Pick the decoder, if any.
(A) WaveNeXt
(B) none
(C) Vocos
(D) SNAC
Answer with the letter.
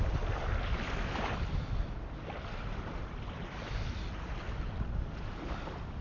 B